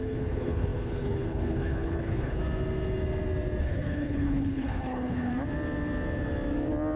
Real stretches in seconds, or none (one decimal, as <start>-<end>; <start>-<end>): 2.4-3.6; 5.3-7.0